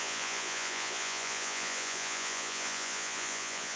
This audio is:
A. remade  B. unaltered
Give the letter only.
A